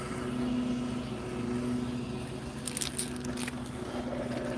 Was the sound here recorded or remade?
recorded